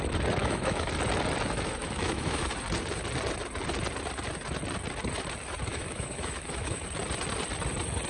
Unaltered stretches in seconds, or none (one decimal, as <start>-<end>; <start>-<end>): 0.0-0.4; 0.9-1.8; 2.5-5.7; 6.8-8.1